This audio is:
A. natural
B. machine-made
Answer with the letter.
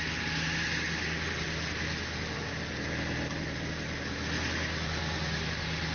A